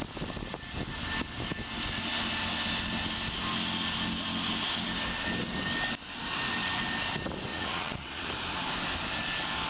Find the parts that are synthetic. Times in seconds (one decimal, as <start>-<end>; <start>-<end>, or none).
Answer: 7.5-8.3